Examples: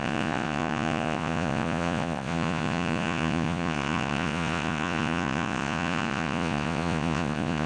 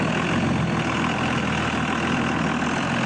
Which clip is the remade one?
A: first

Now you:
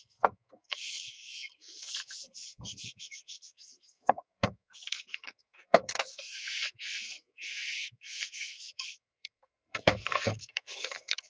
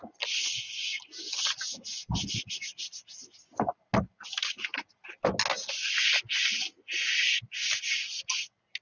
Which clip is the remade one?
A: first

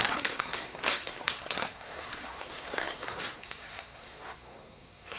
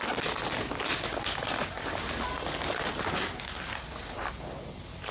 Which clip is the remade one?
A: first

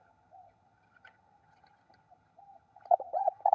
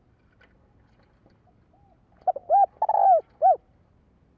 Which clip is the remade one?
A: first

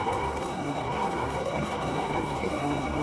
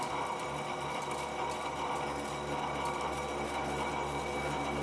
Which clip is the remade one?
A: first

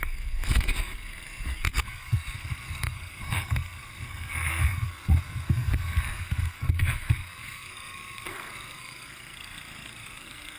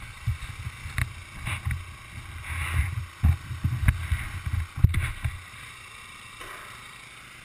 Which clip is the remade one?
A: first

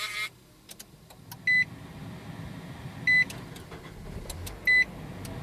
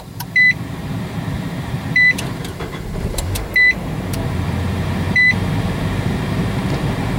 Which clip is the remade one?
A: second